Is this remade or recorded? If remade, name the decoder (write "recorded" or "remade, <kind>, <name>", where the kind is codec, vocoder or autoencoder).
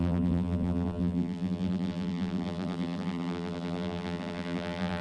remade, vocoder, BigVGAN v2